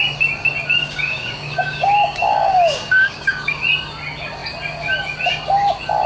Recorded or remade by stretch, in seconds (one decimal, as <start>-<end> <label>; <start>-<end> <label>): 0.0-0.8 recorded; 0.8-3.6 remade; 3.6-6.1 recorded